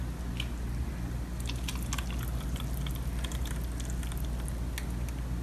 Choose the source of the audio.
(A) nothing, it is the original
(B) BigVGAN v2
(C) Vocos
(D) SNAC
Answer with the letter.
A